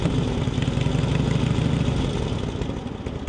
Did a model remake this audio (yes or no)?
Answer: no